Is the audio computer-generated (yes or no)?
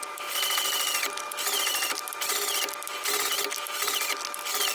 no